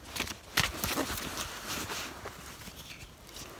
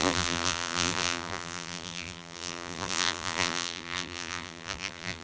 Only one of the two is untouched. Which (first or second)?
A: first